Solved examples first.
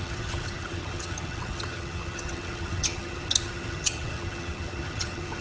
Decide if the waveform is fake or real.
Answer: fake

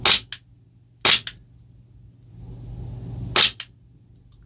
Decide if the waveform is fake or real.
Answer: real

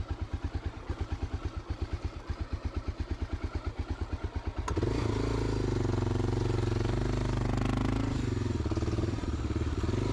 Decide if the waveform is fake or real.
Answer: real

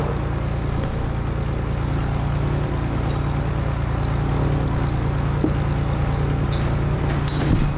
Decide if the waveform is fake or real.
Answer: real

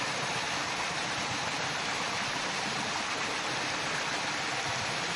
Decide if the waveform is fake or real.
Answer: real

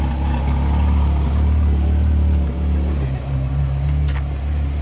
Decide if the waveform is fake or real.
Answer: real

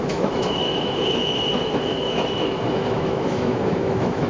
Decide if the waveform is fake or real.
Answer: fake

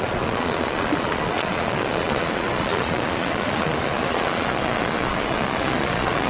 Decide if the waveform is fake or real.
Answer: fake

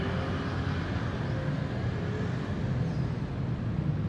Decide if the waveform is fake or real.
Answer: real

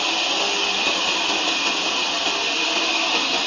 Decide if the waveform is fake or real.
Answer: real